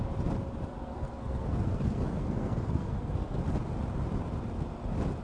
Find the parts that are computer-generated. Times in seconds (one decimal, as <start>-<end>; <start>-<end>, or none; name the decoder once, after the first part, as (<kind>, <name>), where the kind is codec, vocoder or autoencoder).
0.8-3.4 (codec, SNAC)